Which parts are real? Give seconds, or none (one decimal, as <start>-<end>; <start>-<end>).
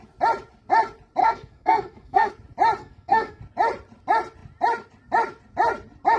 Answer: 0.0-1.2; 2.3-2.8; 3.4-6.2